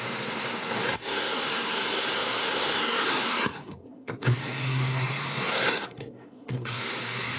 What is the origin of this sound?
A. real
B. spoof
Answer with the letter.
B